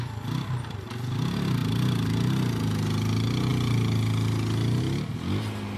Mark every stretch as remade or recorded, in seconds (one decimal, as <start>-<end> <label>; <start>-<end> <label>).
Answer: 0.0-5.8 recorded